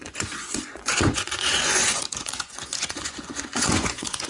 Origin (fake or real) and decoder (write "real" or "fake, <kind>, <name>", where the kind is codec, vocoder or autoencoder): fake, vocoder, Vocos